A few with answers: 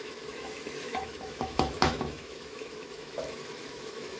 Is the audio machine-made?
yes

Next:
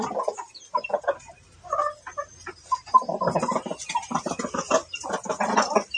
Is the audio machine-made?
no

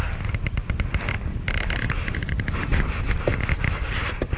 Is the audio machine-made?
no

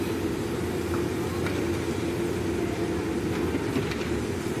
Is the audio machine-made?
no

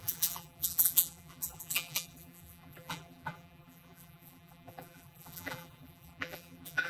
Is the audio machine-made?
yes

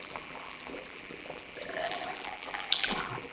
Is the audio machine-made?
yes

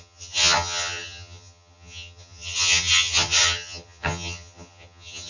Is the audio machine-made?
yes